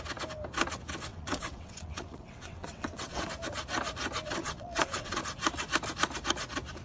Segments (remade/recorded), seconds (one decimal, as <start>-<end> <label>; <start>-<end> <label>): 0.0-1.1 recorded; 1.1-3.3 remade; 3.3-4.4 recorded; 4.4-5.2 remade; 5.2-6.8 recorded